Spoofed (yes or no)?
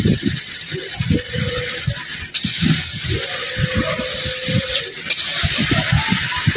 no